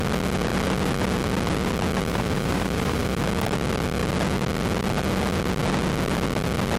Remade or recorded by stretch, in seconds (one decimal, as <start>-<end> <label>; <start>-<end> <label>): 0.0-2.1 recorded; 2.1-3.2 remade; 3.2-6.8 recorded